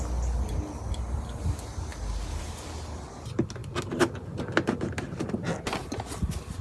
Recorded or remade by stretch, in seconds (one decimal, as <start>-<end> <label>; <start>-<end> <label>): 0.0-6.6 recorded